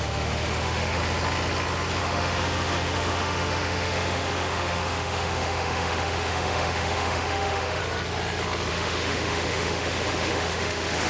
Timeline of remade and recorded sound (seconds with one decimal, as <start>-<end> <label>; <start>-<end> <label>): 0.0-1.0 remade; 1.0-2.0 recorded; 2.0-7.8 remade; 7.8-8.7 recorded; 8.7-11.1 remade